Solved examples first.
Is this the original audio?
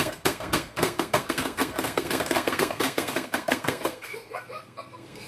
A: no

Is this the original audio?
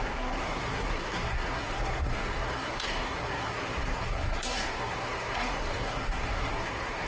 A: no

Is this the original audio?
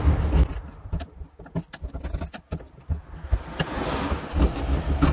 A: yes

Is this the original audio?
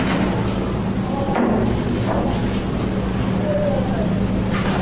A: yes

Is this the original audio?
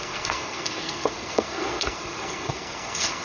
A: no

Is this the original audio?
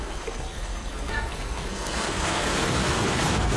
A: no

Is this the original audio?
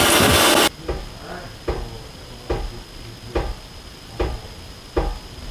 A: yes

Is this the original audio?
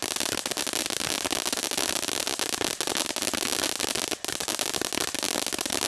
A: yes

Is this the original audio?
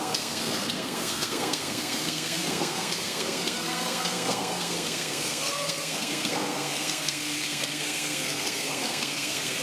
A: no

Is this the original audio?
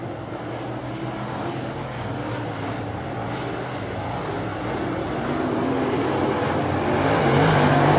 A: yes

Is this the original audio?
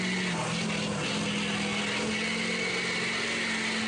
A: yes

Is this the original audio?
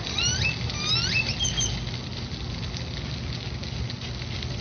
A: yes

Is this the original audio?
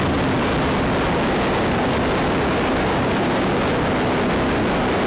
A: yes